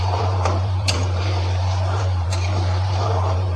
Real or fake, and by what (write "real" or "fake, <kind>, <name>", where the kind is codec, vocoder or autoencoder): fake, vocoder, BigVGAN v2